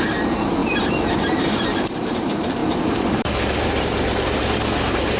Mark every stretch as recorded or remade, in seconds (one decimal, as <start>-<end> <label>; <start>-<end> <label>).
0.0-5.2 remade